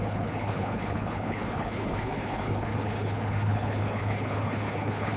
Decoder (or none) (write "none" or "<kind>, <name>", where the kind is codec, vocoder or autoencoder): codec, HILCodec